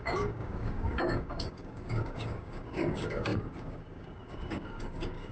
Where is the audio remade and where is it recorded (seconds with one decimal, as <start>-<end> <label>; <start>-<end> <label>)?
0.0-5.3 remade